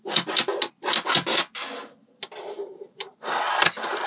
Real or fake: real